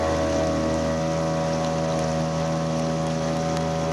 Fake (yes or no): no